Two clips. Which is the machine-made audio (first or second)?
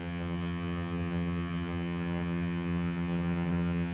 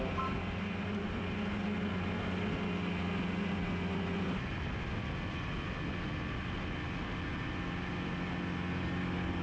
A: first